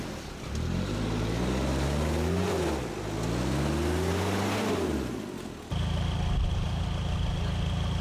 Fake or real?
real